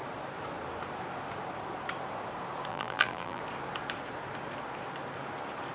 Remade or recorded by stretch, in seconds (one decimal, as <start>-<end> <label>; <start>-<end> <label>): 0.0-2.7 recorded; 2.7-3.4 remade; 3.4-5.7 recorded